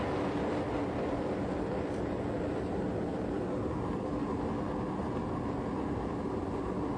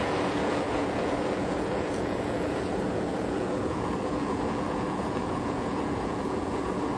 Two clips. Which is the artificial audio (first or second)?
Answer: second